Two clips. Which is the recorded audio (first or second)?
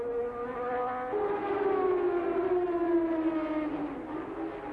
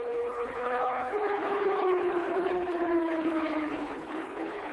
first